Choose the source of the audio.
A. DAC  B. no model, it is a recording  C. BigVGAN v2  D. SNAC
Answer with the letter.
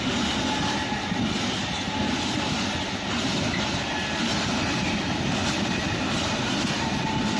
B